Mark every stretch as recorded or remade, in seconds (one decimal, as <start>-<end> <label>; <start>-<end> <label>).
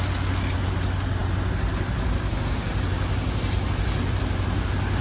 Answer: 0.0-5.0 recorded